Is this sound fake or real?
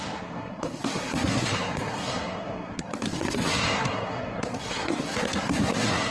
fake